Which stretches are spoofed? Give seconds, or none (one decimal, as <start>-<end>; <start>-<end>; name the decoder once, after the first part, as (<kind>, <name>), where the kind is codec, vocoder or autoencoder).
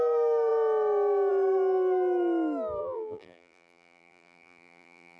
2.8-5.2 (vocoder, BigVGAN v2)